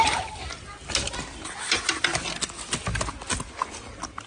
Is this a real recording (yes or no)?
yes